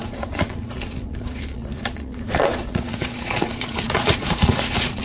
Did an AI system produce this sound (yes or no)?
yes